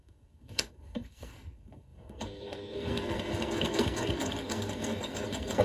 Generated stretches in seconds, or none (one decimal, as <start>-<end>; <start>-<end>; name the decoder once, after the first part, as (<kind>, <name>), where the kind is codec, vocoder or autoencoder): 0.0-5.6 (codec, SNAC)